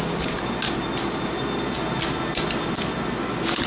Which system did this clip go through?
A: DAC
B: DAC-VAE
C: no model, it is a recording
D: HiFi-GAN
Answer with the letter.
C